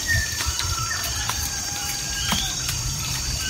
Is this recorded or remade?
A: remade